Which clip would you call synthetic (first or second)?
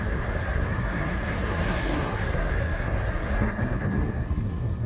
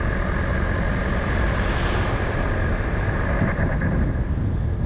first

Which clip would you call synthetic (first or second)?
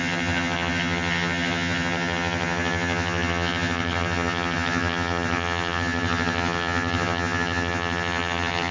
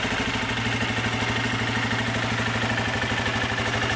first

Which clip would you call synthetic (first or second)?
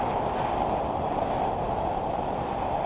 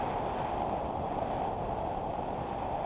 second